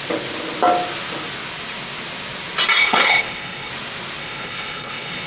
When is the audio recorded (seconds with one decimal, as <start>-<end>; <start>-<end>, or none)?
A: 0.0-2.8; 3.7-4.2